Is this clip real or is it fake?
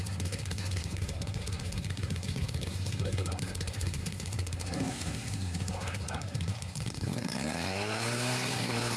fake